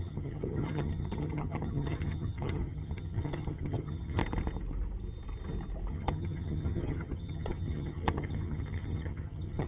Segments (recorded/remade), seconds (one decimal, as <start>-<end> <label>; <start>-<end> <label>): 0.0-4.2 remade; 4.2-5.9 recorded; 5.9-9.7 remade